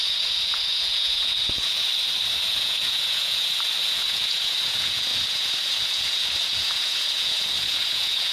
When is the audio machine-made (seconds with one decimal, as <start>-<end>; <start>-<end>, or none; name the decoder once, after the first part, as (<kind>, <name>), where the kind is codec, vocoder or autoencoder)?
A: 0.0-1.9 (vocoder, Vocos); 2.5-8.3